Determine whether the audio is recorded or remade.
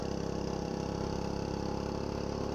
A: recorded